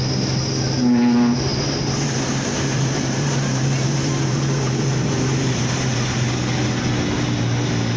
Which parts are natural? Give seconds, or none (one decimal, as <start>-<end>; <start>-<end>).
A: 0.0-1.5; 6.3-8.0